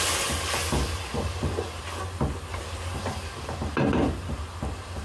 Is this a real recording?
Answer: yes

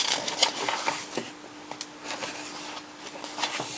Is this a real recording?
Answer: yes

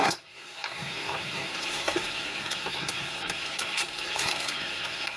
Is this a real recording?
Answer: no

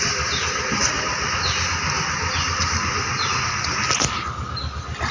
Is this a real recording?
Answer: yes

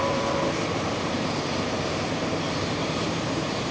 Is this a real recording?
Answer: no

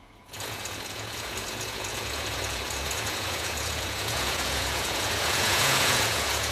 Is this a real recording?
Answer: no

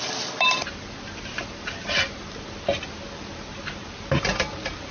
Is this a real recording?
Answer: yes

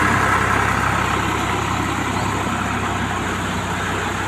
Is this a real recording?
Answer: yes